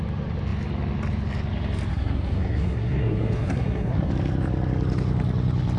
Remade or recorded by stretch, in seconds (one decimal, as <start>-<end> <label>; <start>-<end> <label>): 0.0-1.9 recorded; 1.9-4.1 remade; 4.1-5.8 recorded